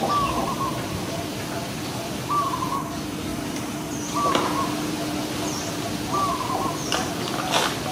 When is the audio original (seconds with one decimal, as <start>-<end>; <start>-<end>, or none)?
0.0-3.3; 4.3-7.9